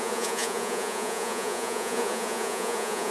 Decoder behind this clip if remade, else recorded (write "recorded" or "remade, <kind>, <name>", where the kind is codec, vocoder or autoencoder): remade, vocoder, Vocos